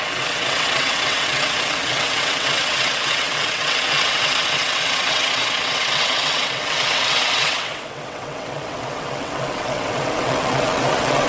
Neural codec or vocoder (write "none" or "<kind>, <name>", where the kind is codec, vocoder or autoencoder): vocoder, WaveNeXt